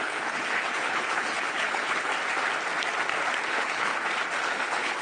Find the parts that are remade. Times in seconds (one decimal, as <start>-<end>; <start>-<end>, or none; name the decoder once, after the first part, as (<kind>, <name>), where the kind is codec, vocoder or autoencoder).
0.0-2.1 (codec, HILCodec); 3.5-3.9; 4.4-5.0